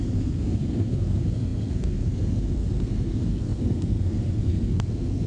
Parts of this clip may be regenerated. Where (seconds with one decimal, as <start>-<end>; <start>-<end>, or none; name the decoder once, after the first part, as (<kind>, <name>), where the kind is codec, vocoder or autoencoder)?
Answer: 0.0-5.3 (codec, SNAC)